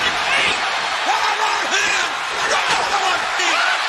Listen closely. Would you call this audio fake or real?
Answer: fake